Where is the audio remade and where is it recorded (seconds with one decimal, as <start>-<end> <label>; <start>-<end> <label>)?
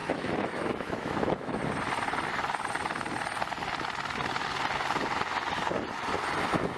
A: 0.0-1.6 remade; 1.6-6.8 recorded